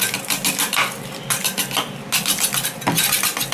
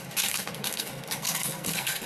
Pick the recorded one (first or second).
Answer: first